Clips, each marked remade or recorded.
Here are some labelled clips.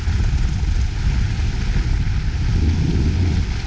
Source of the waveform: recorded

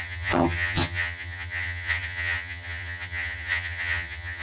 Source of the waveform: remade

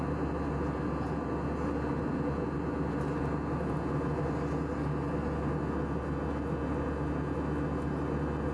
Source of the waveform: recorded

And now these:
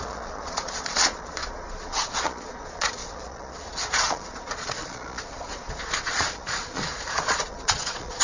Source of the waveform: remade